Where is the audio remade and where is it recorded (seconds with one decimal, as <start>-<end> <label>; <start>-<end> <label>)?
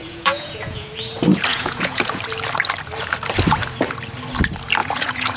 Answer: 0.0-0.9 remade; 0.9-1.5 recorded; 1.5-2.2 remade; 2.2-4.8 recorded; 4.8-5.4 remade